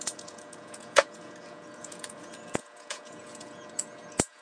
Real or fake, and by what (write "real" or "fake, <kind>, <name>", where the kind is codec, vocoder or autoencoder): fake, vocoder, Vocos